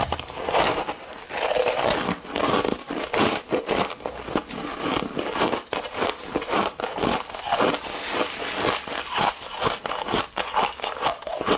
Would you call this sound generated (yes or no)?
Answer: no